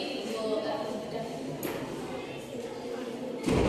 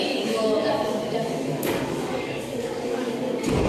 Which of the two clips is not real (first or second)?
second